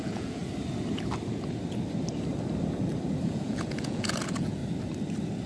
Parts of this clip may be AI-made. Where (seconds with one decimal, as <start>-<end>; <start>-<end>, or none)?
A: 0.0-0.4; 3.3-4.6